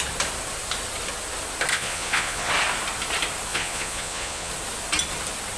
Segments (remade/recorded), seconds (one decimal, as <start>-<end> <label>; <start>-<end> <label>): 0.0-1.7 recorded; 1.7-2.5 remade; 2.5-3.5 recorded; 3.5-4.5 remade; 4.5-5.6 recorded